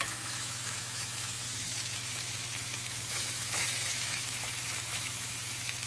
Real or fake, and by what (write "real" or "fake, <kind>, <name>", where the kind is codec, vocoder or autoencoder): fake, autoencoder, DAC-VAE